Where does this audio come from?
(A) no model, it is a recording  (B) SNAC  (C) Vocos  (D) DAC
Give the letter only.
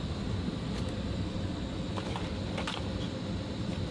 A